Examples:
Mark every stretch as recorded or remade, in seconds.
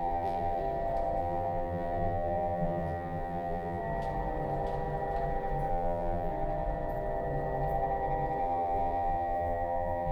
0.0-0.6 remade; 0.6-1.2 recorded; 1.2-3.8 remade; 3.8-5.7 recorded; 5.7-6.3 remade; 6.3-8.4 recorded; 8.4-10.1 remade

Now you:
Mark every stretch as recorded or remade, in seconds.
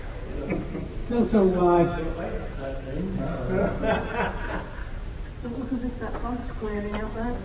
0.0-4.8 recorded; 4.8-6.0 remade; 6.0-6.4 recorded; 6.4-7.0 remade; 7.0-7.4 recorded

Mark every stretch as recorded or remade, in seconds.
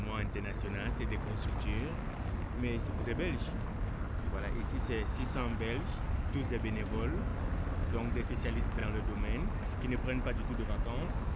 0.0-11.4 recorded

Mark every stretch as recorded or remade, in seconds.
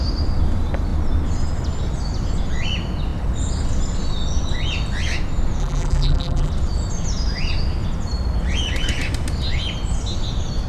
0.0-5.6 recorded; 5.6-6.5 remade; 6.5-10.7 recorded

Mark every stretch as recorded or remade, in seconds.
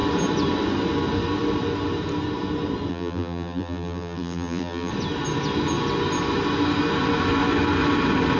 0.0-2.9 recorded; 2.9-4.9 remade; 4.9-8.4 recorded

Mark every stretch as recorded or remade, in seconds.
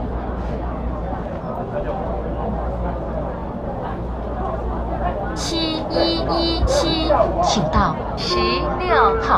0.0-9.4 recorded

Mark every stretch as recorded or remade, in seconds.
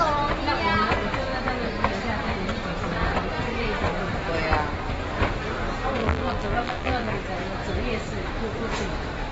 0.0-6.0 recorded; 6.0-7.1 remade; 7.1-9.3 recorded